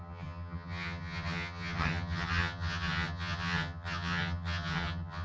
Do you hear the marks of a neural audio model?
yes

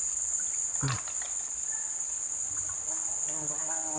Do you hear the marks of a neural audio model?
no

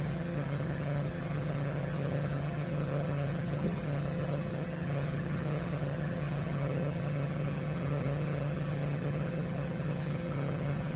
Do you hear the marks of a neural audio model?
yes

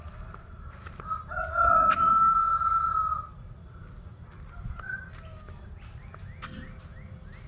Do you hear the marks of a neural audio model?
no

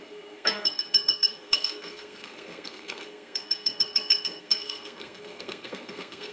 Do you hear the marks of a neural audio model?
yes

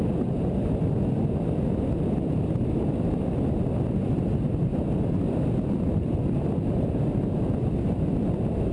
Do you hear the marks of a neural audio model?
no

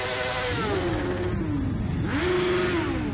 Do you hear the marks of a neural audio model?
no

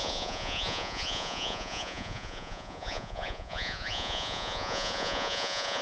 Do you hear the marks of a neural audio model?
yes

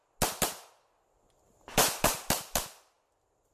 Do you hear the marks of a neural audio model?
no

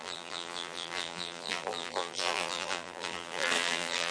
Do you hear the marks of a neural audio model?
yes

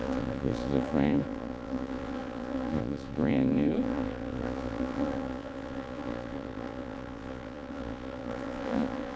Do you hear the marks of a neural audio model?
yes